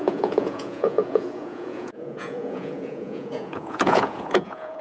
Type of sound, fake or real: fake